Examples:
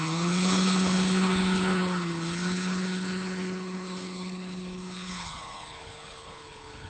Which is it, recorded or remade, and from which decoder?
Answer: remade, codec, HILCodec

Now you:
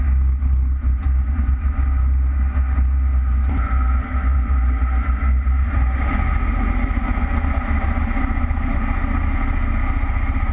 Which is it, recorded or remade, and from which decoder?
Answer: recorded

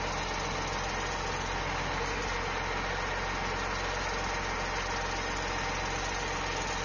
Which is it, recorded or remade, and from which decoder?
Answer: recorded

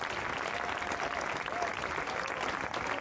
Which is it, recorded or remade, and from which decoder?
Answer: recorded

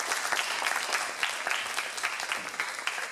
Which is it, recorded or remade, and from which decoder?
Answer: recorded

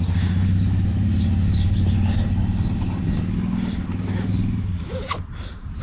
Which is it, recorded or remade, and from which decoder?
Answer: recorded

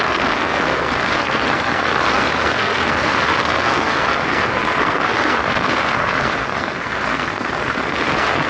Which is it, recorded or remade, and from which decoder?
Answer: remade, codec, SNAC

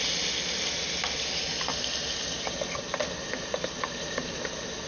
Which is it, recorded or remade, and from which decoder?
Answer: recorded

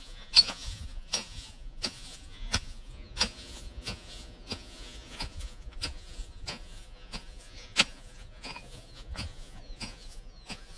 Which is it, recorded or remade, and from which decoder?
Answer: remade, vocoder, Vocos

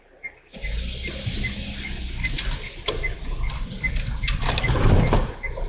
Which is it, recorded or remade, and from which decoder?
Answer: recorded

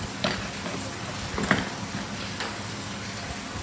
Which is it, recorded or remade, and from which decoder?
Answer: recorded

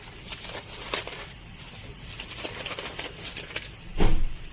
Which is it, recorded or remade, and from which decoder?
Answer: remade, vocoder, BigVGAN v2